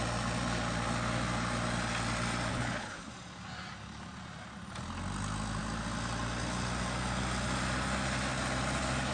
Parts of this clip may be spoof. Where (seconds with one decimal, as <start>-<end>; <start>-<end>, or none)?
2.5-3.1